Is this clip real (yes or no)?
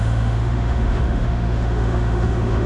no